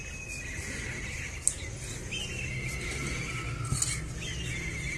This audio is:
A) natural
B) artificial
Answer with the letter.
A